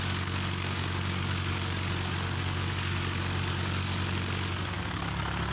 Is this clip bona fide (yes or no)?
no